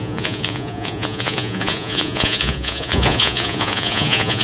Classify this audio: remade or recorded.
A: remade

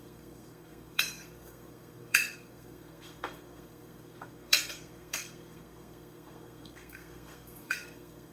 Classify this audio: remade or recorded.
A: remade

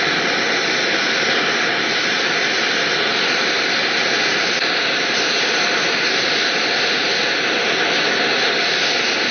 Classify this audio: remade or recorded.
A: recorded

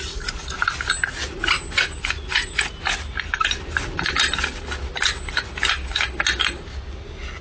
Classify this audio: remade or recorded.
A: recorded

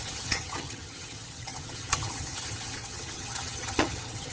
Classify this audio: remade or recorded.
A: remade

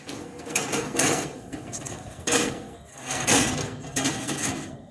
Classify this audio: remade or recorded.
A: remade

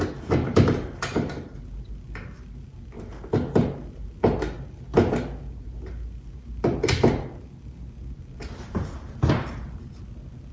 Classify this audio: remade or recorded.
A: recorded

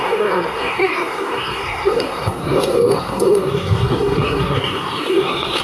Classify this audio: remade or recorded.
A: remade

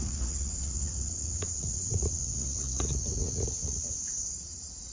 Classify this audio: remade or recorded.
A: remade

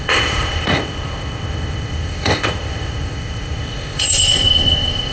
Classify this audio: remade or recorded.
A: remade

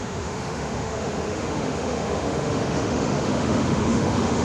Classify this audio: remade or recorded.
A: remade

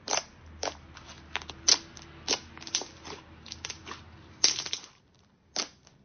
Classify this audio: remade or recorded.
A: recorded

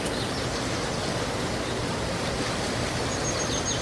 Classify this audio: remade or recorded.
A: recorded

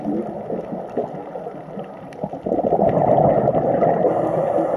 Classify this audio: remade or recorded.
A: recorded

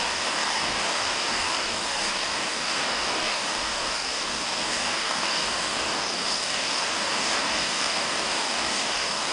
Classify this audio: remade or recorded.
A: remade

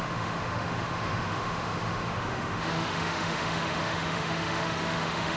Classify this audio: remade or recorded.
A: remade